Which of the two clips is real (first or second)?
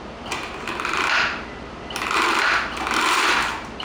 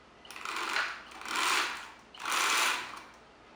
second